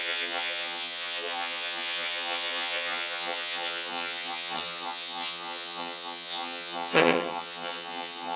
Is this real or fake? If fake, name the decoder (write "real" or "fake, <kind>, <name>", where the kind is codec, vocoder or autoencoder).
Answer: fake, vocoder, HiFi-GAN